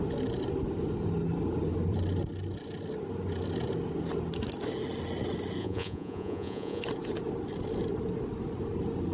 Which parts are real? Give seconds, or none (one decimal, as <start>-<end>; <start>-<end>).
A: 0.0-5.6; 6.8-9.1